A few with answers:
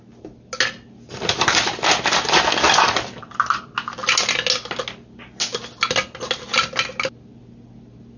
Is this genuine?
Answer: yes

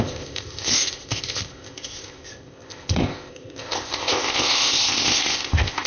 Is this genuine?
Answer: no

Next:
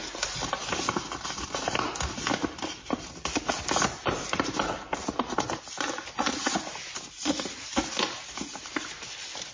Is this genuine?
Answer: yes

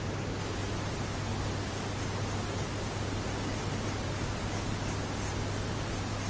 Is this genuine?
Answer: yes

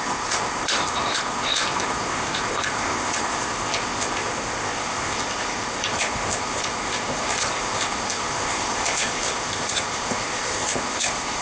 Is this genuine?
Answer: no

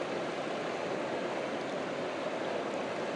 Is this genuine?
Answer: yes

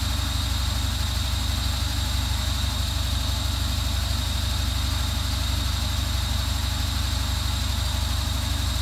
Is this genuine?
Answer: yes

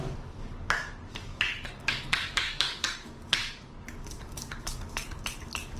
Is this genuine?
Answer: no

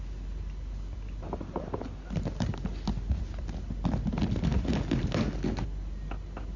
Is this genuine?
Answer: yes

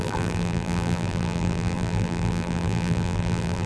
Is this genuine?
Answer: no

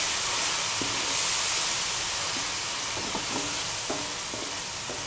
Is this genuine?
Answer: no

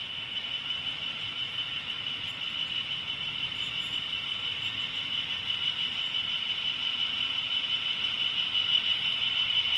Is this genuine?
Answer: yes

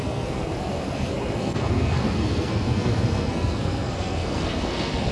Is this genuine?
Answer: no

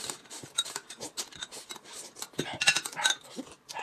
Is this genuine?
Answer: no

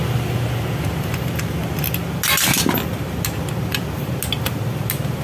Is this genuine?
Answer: yes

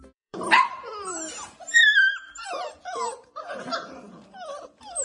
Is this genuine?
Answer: no